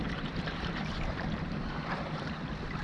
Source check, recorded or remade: remade